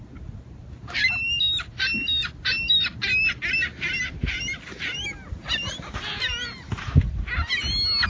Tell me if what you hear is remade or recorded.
recorded